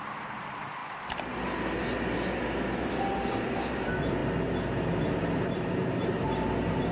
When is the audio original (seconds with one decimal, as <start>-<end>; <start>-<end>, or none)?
0.8-3.7; 4.2-4.9